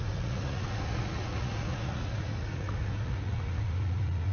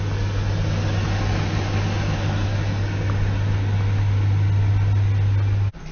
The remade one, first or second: first